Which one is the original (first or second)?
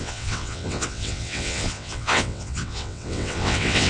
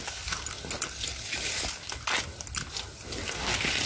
second